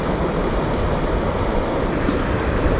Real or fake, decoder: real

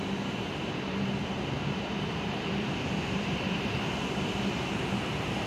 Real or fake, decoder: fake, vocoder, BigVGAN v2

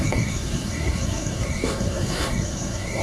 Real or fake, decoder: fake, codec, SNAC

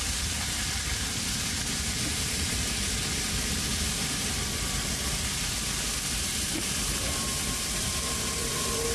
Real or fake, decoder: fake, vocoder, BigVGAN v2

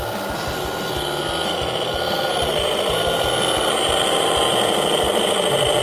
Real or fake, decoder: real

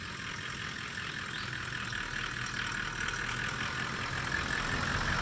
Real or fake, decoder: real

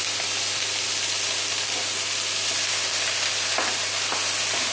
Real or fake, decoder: real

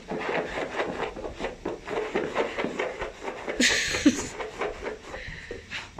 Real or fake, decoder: real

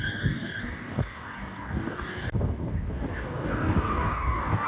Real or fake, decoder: fake, codec, DAC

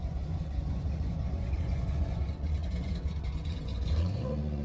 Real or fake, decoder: fake, vocoder, Vocos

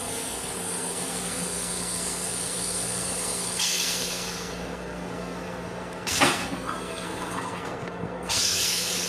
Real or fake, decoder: fake, codec, SNAC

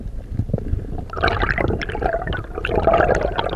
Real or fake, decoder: real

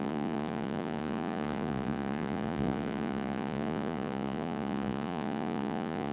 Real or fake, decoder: fake, vocoder, Vocos